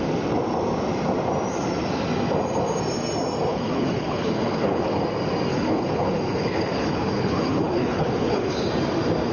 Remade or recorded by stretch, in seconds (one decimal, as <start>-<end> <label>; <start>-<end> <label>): 0.0-3.5 recorded; 3.5-5.0 remade; 5.0-5.5 recorded; 5.5-8.7 remade; 8.7-9.3 recorded